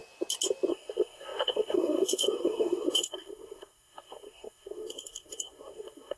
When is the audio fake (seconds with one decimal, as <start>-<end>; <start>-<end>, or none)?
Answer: 0.7-6.2

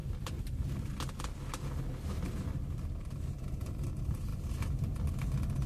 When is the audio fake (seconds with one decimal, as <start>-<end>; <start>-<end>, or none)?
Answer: none

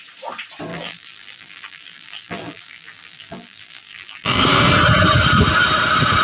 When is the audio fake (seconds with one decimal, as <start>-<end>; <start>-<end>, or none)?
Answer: 0.7-4.4

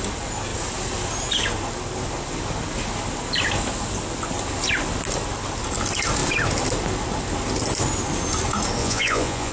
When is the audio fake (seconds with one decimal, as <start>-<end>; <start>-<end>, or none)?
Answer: 8.8-9.5

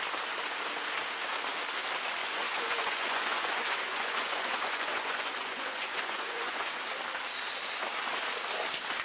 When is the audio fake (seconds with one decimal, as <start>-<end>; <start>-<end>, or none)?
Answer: 2.2-6.8